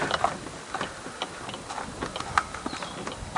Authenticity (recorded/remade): recorded